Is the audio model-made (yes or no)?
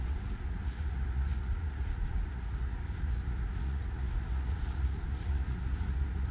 yes